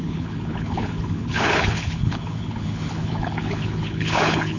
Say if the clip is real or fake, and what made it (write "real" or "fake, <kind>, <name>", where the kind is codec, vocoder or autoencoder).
fake, codec, HILCodec